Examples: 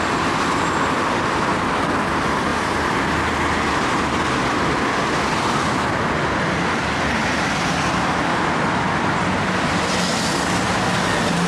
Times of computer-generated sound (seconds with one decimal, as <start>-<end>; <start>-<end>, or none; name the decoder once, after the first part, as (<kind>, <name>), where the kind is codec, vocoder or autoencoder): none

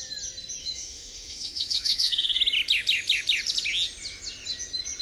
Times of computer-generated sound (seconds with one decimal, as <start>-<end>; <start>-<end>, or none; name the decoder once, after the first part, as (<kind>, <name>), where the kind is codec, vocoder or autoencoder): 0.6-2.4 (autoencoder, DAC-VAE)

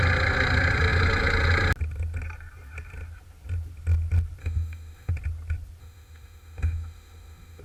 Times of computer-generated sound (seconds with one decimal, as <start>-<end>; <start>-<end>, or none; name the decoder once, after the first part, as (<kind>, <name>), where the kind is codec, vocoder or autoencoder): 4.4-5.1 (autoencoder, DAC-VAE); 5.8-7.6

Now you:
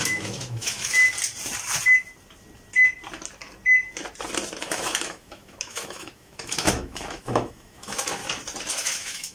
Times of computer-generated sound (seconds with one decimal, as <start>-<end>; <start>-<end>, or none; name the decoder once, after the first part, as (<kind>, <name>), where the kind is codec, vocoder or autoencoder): 0.0-1.0 (autoencoder, DAC-VAE); 4.6-8.2; 8.7-9.3

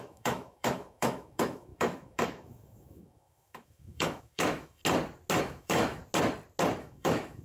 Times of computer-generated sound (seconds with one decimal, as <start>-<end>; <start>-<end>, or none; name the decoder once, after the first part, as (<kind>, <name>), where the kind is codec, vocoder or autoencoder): 0.0-4.8 (autoencoder, DAC-VAE); 5.4-6.0; 6.8-7.4

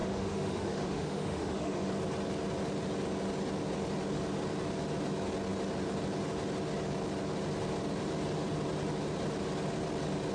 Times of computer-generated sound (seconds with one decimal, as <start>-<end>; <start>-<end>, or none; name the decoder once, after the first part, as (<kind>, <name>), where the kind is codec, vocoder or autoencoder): 0.0-1.9 (autoencoder, DAC-VAE)

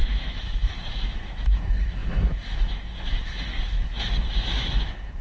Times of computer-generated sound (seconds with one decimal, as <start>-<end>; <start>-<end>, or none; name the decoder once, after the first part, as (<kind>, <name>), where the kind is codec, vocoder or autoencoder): 0.0-5.2 (autoencoder, DAC-VAE)

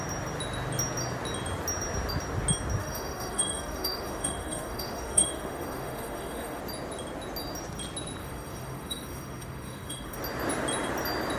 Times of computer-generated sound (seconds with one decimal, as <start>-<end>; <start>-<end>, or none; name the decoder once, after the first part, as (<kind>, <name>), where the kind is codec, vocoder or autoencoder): 2.8-6.6 (autoencoder, DAC-VAE); 8.2-10.2